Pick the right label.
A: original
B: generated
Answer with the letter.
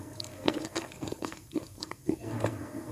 B